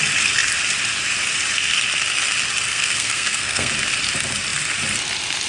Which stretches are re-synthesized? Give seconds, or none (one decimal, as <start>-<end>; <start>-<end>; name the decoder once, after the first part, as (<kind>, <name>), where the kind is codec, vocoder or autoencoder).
2.7-3.7 (codec, SNAC)